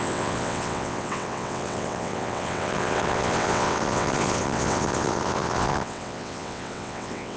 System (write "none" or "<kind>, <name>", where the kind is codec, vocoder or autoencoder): vocoder, WaveNeXt